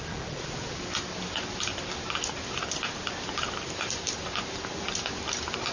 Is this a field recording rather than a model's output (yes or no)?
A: yes